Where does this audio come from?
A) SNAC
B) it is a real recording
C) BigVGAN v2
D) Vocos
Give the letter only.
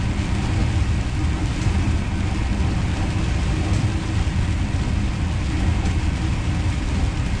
B